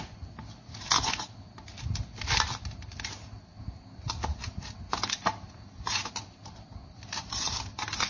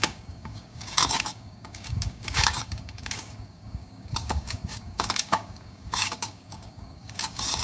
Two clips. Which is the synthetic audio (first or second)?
second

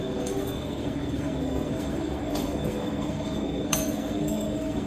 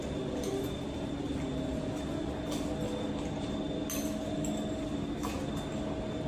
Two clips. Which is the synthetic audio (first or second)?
first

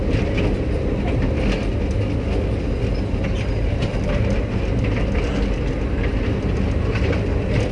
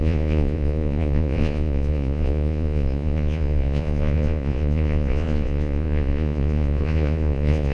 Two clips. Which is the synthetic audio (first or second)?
second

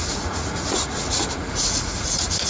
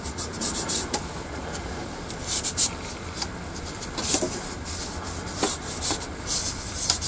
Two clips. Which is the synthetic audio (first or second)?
first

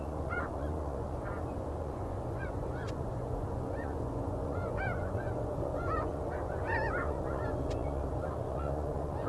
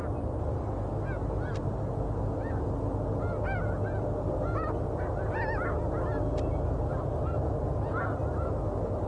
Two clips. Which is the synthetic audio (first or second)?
first